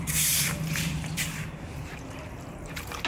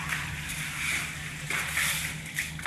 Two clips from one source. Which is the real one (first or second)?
second